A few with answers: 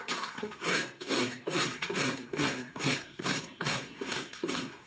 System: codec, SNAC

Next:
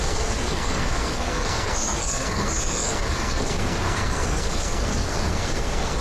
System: codec, SNAC